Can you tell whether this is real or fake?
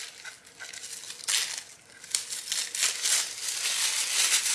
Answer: real